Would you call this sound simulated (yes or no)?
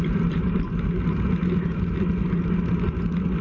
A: no